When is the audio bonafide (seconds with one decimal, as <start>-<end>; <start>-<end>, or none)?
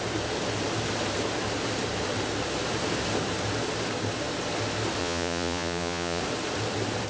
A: 0.0-5.0; 6.2-7.1